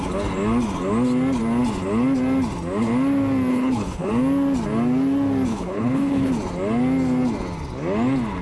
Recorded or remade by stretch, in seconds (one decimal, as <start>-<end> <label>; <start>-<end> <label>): 0.0-3.5 recorded; 3.5-4.1 remade; 4.1-5.5 recorded; 5.5-6.3 remade; 6.3-8.4 recorded